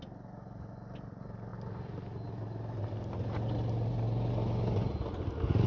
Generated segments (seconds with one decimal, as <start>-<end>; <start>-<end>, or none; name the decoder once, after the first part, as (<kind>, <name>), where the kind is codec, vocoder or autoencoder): none